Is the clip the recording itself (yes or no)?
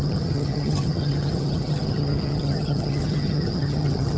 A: no